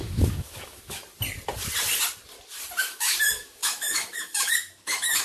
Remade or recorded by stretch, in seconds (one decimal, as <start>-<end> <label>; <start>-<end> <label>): 0.0-1.0 remade; 1.0-2.8 recorded; 2.8-5.2 remade